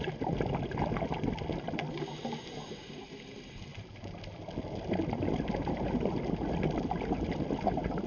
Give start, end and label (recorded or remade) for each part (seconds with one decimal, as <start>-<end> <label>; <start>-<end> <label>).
0.0-8.1 recorded